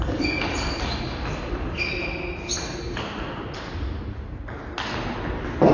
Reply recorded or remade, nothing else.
recorded